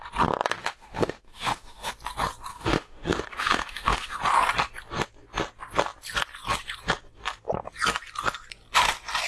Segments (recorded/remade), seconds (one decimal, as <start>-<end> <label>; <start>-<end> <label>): 0.0-0.6 recorded; 0.6-1.9 remade; 1.9-2.5 recorded; 2.5-4.2 remade; 4.2-9.3 recorded